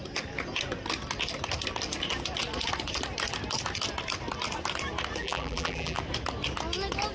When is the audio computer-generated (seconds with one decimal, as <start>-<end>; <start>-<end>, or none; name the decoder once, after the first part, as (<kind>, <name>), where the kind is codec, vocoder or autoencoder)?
5.2-6.0 (vocoder, BigVGAN v2)